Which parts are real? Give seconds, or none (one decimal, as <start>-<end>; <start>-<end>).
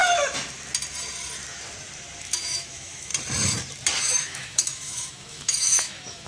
0.0-2.2; 3.1-4.0